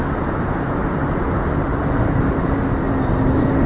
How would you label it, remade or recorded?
recorded